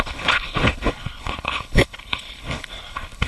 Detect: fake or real fake